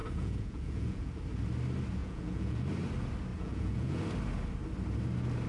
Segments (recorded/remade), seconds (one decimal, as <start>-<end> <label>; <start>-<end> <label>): 0.0-1.2 remade; 1.2-2.0 recorded; 2.0-2.7 remade; 2.7-3.3 recorded; 3.3-4.0 remade; 4.0-5.5 recorded

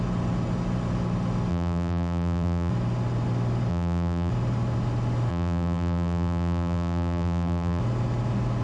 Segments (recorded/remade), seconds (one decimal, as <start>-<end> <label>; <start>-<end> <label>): 0.0-1.5 recorded; 1.5-2.7 remade; 2.7-3.7 recorded; 3.7-4.3 remade; 4.3-5.3 recorded; 5.3-7.8 remade; 7.8-8.6 recorded

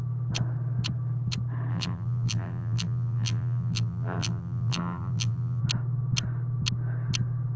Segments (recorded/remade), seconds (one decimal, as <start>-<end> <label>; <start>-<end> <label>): 0.0-1.7 recorded; 1.7-5.6 remade; 5.6-7.6 recorded